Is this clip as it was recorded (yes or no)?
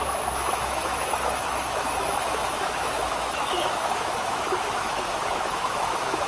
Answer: no